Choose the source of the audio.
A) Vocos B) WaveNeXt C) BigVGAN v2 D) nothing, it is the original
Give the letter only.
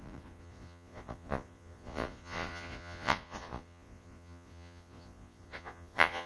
A